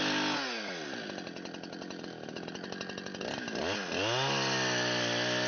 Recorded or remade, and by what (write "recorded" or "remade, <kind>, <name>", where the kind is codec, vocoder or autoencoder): recorded